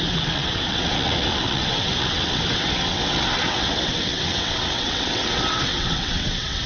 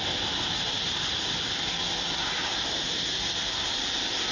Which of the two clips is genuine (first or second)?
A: second